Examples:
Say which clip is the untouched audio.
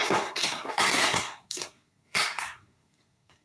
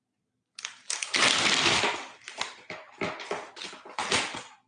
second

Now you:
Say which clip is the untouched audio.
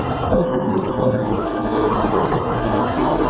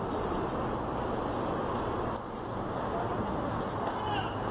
second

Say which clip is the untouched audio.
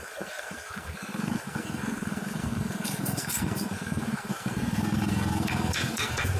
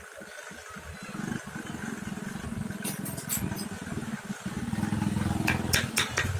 second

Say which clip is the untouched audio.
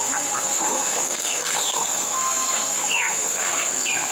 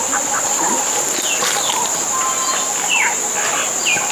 second